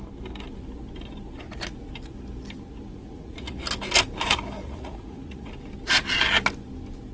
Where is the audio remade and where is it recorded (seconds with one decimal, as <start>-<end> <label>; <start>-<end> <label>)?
0.0-2.9 recorded; 2.9-3.6 remade; 3.6-4.6 recorded; 4.6-5.5 remade; 5.5-7.1 recorded